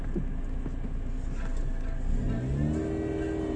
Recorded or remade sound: recorded